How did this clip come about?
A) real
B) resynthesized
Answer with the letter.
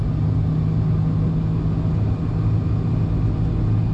A